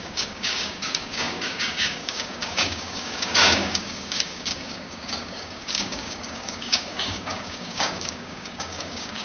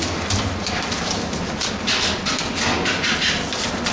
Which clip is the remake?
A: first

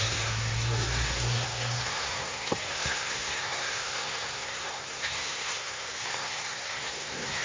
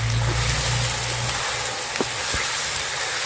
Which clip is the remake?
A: first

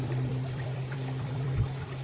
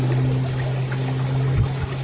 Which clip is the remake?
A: first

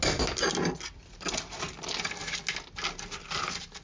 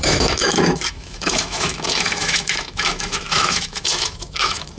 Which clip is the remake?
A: second